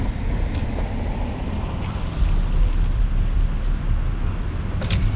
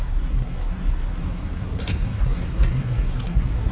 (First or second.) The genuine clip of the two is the first